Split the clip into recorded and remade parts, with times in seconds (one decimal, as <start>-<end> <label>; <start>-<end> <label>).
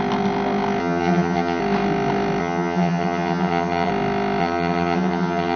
0.0-0.8 recorded; 0.8-1.6 remade; 1.6-2.4 recorded; 2.4-3.9 remade; 3.9-4.4 recorded; 4.4-5.6 remade